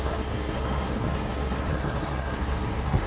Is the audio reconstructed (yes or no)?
yes